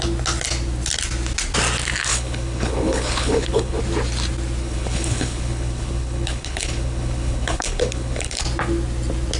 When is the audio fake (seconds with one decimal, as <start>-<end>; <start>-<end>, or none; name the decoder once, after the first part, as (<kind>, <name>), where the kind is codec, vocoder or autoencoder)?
2.1-3.8 (codec, HILCodec); 4.6-8.4